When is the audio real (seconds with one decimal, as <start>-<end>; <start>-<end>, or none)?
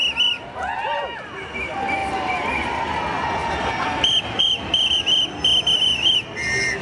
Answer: 0.0-2.0; 2.5-6.8